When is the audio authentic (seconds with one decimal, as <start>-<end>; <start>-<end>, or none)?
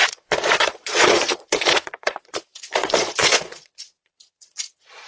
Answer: none